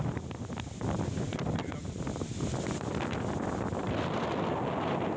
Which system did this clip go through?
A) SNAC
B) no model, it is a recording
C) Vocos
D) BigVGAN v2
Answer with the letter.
D